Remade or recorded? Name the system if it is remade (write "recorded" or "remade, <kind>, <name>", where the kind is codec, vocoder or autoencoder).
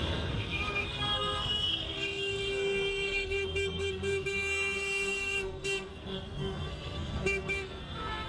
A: remade, codec, SNAC